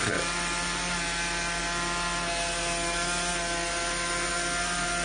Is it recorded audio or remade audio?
recorded